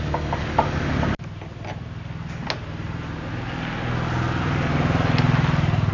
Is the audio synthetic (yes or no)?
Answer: no